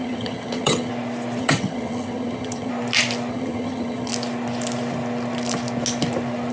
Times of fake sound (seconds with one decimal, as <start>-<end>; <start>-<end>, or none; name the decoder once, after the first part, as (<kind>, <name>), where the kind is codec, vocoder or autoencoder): 0.0-0.9 (vocoder, HiFi-GAN); 1.4-2.7; 3.3-4.1